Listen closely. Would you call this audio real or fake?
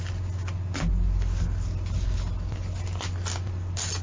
real